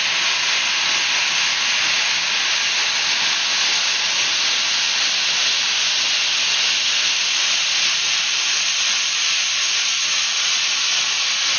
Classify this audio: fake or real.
real